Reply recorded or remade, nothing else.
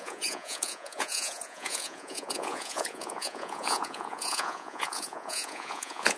remade